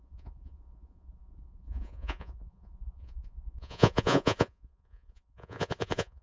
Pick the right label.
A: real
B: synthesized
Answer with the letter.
B